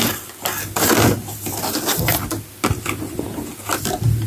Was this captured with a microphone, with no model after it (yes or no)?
yes